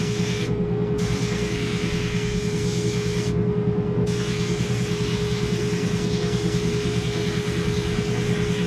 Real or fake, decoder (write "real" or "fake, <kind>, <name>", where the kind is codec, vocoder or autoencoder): fake, codec, SNAC